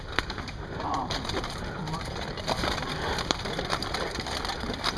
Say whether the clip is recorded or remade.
remade